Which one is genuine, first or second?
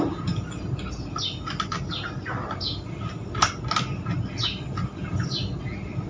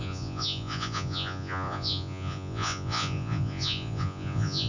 first